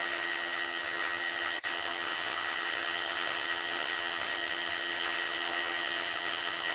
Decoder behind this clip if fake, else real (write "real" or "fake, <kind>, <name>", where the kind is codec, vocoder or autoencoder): fake, vocoder, HiFi-GAN